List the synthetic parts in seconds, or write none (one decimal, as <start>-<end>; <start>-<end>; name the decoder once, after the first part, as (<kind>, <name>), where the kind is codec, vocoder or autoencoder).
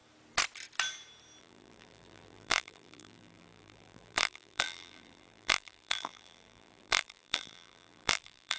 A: 1.4-8.6 (vocoder, BigVGAN v2)